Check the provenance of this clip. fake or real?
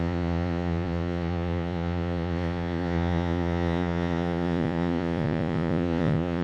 fake